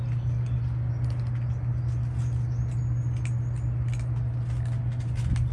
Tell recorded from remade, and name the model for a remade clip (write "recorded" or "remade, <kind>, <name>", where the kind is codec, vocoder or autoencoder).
recorded